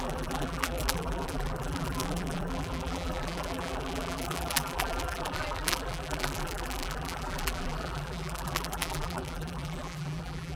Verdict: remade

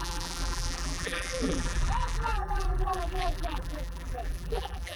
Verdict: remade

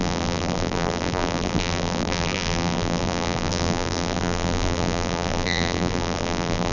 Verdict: remade